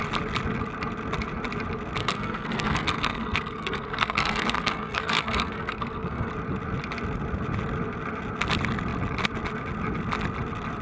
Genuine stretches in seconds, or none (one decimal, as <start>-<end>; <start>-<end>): 0.0-2.0; 6.3-10.8